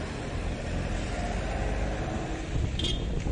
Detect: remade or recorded recorded